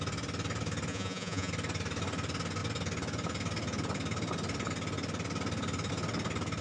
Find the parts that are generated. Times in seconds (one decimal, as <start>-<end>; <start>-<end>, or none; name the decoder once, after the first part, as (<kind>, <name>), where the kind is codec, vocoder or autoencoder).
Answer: 0.9-1.5 (vocoder, Vocos)